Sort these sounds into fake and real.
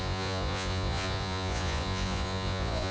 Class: fake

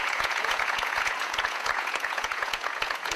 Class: fake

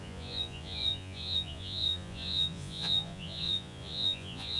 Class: fake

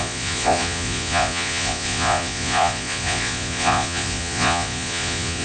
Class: fake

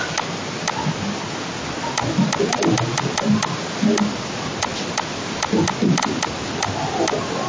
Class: real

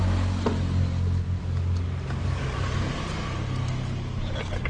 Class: real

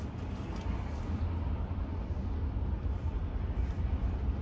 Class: real